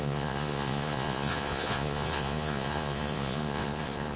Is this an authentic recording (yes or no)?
no